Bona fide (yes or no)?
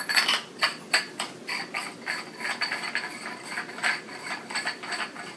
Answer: yes